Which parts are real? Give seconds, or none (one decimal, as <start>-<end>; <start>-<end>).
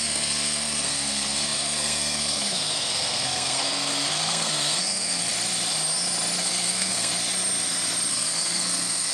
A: 5.3-6.4; 7.1-8.1